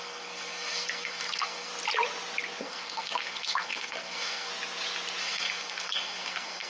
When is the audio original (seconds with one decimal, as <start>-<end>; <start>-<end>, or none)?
1.7-2.6; 4.5-5.2

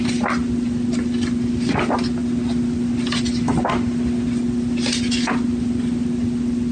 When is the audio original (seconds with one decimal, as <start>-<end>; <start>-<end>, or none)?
0.0-6.7

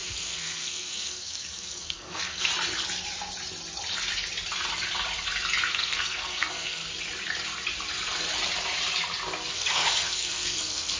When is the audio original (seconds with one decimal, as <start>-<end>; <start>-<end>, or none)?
2.5-5.7; 6.8-9.5